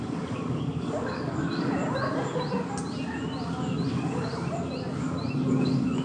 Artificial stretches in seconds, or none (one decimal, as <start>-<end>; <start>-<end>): 0.0-1.8; 3.9-4.3; 5.5-6.0